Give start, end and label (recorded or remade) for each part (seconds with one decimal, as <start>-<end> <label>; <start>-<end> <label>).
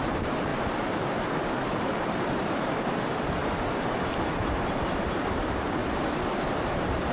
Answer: 0.0-0.5 remade; 0.5-1.7 recorded; 1.7-3.4 remade; 3.4-4.1 recorded; 4.1-5.8 remade; 5.8-7.1 recorded